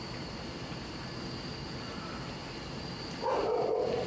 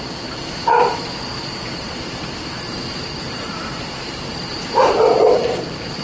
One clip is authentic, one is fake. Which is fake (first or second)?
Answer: second